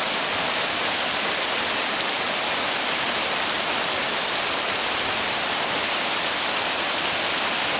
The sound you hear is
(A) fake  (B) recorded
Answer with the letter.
B